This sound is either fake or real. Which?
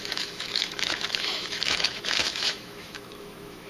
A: fake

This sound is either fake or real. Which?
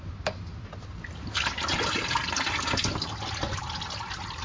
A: real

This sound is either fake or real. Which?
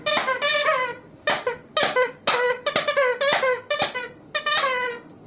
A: real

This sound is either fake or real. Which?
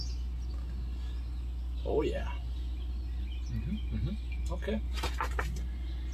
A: real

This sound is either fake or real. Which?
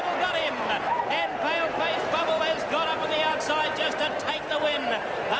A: real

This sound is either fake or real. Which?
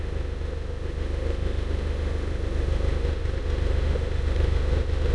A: fake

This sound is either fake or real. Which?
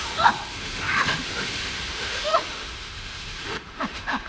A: fake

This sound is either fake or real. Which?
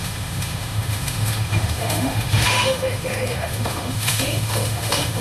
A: fake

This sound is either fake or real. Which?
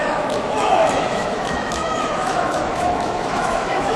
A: fake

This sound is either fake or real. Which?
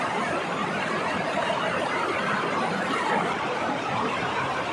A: real